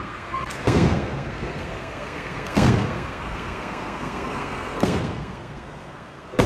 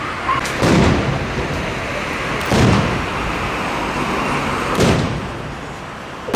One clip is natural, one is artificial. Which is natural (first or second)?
second